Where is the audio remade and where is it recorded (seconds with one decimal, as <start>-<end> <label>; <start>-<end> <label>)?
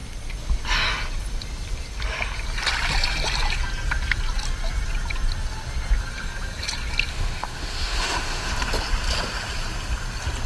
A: 0.0-7.1 recorded; 7.1-8.5 remade; 8.5-10.5 recorded